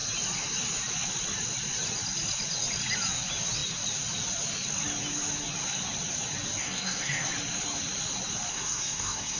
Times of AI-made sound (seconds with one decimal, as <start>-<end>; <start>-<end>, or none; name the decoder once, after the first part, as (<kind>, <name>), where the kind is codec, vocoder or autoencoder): 6.6-7.3 (codec, SNAC); 8.5-9.4